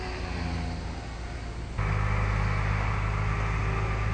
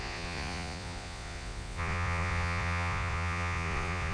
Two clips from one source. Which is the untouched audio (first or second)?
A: first